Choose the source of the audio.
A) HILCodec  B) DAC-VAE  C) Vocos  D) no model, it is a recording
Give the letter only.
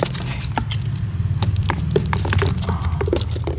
D